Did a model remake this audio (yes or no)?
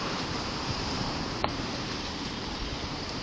yes